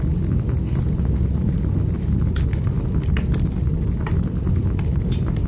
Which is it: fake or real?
real